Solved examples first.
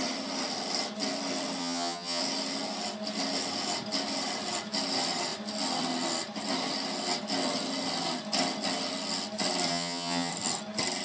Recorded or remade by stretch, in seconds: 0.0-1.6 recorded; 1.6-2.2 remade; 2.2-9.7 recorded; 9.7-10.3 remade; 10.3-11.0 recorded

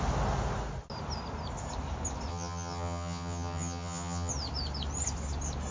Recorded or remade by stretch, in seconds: 0.0-2.3 recorded; 2.3-4.3 remade; 4.3-5.7 recorded